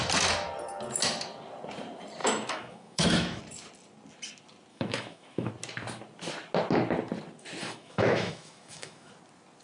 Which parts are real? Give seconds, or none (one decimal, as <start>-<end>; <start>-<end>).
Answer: 0.0-2.2; 3.4-4.7; 5.5-7.6; 9.1-9.6